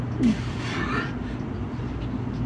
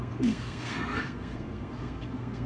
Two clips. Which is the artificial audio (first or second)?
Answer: second